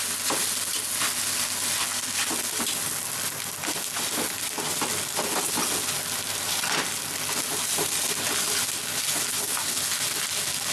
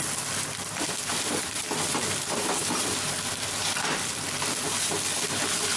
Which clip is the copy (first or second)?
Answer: second